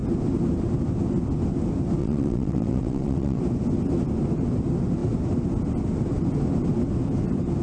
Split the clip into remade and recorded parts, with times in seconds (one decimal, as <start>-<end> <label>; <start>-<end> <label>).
0.0-2.0 recorded; 2.0-3.4 remade; 3.4-7.6 recorded